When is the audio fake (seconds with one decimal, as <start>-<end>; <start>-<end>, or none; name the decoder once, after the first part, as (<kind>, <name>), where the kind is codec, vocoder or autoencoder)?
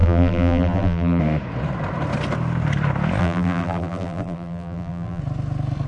0.0-1.2 (vocoder, BigVGAN v2); 3.2-5.2